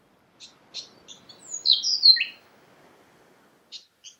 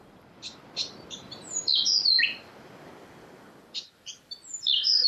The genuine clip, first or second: first